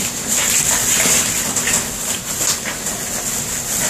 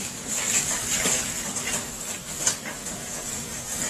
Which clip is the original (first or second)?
first